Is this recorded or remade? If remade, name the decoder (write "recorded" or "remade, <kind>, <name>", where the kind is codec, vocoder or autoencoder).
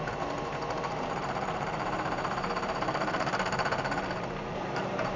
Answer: remade, vocoder, BigVGAN v2